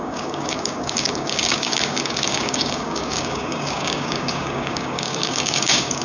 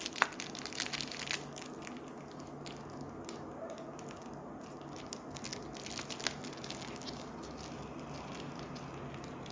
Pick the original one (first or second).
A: second